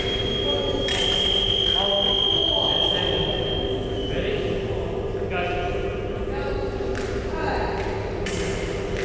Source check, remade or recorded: recorded